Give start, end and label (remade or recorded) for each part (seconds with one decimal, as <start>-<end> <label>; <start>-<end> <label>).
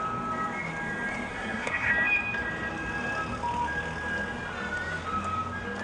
0.0-1.3 recorded; 1.3-1.9 remade; 1.9-5.8 recorded